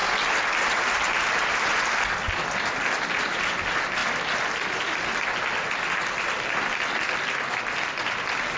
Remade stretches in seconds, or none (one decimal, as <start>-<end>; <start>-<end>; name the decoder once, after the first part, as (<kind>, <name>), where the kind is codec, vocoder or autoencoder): none

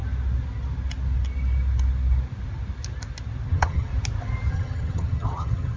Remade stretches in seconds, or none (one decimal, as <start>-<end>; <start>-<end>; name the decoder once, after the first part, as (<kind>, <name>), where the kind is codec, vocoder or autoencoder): 3.5-3.9 (vocoder, HiFi-GAN); 4.5-5.8